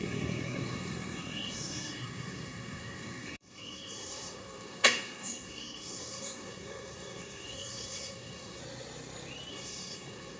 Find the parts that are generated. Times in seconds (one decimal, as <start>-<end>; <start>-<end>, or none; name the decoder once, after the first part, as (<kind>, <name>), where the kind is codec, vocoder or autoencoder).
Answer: 0.0-8.6 (codec, SNAC); 9.5-10.4